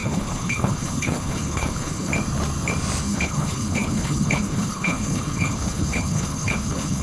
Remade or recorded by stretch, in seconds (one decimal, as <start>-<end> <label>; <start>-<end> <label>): 0.0-2.1 remade; 2.1-3.0 recorded; 3.0-7.0 remade